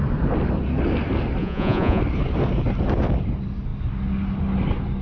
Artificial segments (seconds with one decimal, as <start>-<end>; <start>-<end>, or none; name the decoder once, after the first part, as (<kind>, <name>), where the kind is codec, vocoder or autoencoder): 1.4-2.0 (vocoder, Vocos)